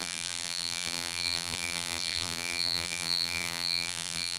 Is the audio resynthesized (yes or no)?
yes